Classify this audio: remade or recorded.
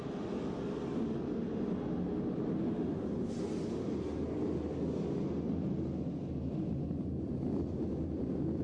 recorded